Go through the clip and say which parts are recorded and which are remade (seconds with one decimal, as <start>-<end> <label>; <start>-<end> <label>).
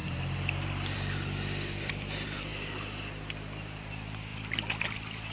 0.0-4.3 remade; 4.3-5.3 recorded